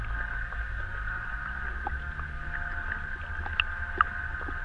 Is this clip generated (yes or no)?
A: no